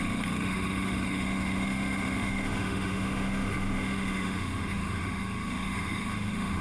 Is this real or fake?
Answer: fake